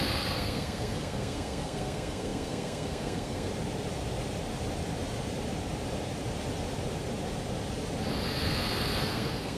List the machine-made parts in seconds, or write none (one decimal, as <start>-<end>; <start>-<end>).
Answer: 0.0-3.5; 8.3-9.6